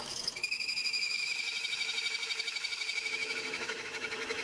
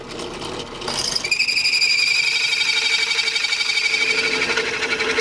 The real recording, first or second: second